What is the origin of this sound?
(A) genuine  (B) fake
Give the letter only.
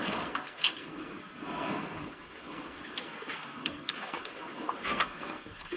B